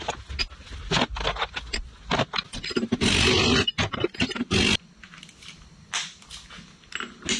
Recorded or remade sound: recorded